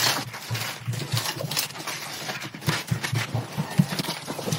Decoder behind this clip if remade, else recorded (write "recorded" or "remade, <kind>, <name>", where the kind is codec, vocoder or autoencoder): recorded